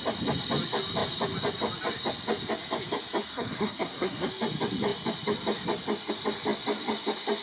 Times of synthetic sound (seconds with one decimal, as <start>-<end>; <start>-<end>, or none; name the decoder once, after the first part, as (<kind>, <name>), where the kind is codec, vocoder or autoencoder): 3.3-4.3 (codec, SNAC)